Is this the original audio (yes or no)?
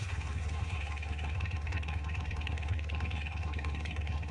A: no